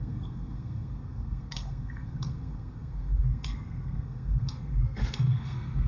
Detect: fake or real fake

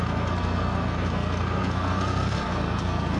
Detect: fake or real fake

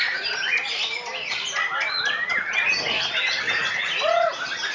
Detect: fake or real real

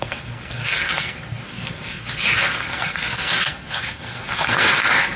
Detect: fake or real fake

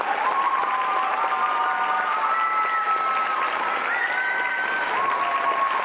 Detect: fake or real real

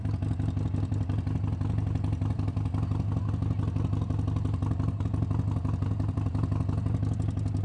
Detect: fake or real real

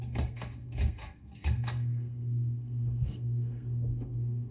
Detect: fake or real fake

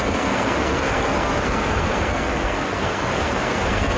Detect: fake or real fake